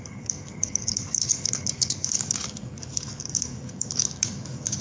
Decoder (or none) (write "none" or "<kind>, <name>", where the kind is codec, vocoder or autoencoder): codec, DAC